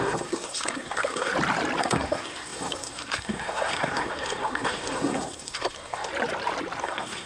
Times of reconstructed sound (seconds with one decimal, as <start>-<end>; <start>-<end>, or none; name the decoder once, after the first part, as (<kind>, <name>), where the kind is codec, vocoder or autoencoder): 0.0-1.3 (codec, SNAC); 1.8-6.1; 6.8-7.3